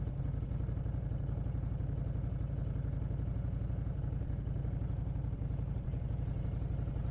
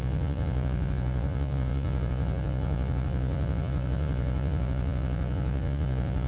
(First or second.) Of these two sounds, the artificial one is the second